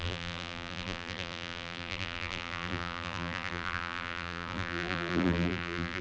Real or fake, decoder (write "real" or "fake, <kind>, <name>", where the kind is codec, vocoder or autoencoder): fake, vocoder, BigVGAN v2